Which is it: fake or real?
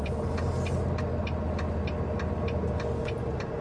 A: real